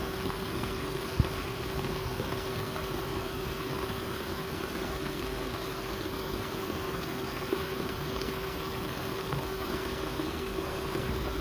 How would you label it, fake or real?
fake